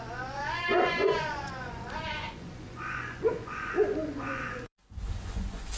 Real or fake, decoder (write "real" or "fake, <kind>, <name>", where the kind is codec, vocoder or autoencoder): fake, vocoder, Vocos